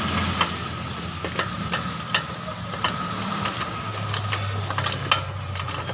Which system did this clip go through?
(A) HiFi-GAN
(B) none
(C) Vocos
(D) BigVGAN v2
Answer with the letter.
B